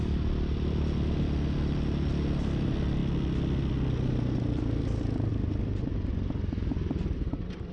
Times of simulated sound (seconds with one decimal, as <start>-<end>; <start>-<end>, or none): none